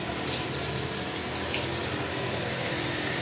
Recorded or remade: recorded